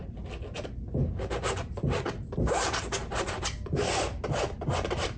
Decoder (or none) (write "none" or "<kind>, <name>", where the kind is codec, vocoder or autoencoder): none